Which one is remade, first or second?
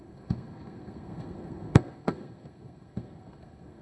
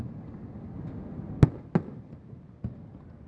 first